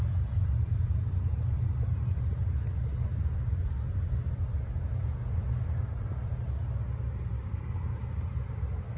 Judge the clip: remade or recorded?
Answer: recorded